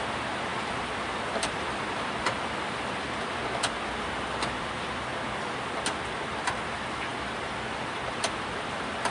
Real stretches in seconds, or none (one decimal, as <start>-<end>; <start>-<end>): 0.0-9.1